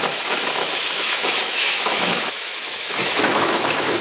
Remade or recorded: remade